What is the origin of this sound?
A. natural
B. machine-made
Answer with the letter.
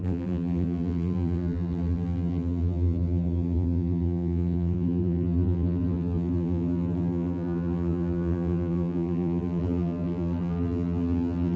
B